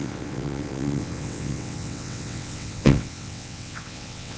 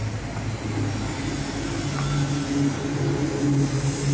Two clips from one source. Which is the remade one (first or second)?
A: first